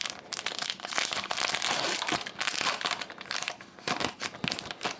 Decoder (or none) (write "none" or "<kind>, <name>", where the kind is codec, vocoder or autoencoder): none